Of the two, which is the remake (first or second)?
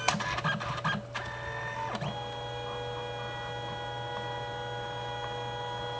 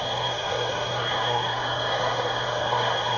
second